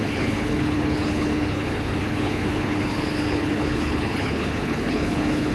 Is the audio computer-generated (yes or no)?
yes